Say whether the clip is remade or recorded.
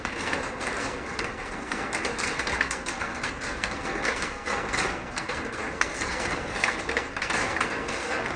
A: remade